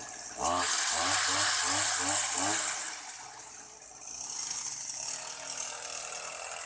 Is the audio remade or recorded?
recorded